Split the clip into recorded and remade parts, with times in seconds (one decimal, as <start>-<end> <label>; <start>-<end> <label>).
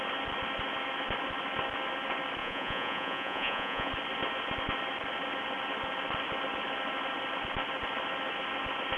0.0-2.4 recorded; 2.4-3.9 remade; 3.9-9.0 recorded